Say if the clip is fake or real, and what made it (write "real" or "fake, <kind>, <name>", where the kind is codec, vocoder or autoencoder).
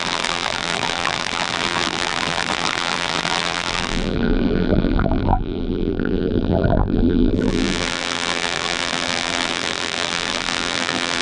fake, vocoder, BigVGAN v2